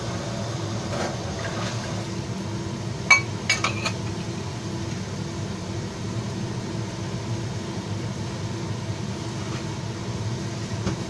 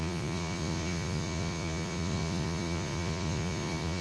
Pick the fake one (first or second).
second